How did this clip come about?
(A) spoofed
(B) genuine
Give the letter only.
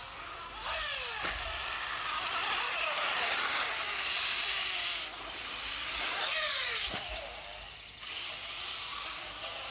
B